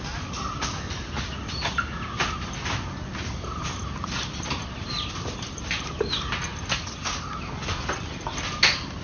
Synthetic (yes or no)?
no